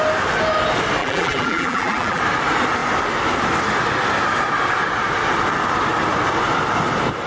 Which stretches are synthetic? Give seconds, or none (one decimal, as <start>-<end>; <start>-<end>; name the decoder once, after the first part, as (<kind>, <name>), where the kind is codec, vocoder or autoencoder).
1.0-2.2 (vocoder, BigVGAN v2)